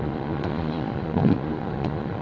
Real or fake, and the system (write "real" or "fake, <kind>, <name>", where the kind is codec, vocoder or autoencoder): fake, vocoder, Vocos